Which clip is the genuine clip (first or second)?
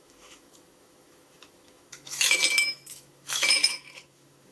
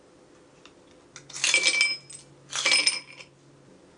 second